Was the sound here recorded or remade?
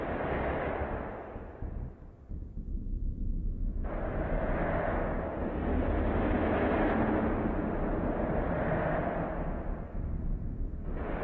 recorded